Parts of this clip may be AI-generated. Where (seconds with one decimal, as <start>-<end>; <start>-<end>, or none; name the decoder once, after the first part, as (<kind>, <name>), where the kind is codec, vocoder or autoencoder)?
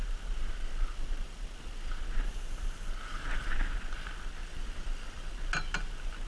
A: 4.4-5.3 (vocoder, BigVGAN v2)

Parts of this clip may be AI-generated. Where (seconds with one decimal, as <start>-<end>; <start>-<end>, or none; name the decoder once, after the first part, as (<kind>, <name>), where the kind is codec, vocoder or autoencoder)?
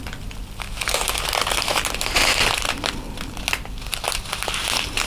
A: none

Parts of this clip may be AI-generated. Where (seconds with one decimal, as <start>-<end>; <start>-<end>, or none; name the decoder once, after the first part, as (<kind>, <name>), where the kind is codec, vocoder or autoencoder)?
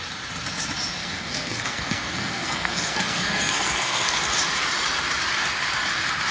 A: 1.0-4.2 (codec, SNAC)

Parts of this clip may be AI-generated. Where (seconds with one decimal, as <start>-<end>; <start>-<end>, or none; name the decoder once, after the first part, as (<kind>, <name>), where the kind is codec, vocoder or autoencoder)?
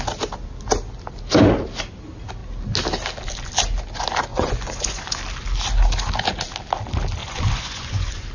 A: 4.3-5.2 (vocoder, Vocos); 7.2-8.3